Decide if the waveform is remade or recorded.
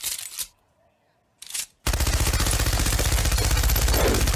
recorded